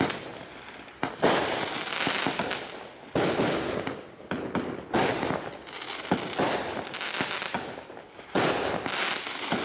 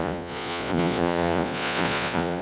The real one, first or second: first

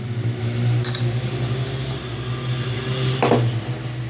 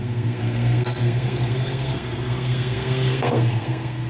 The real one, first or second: first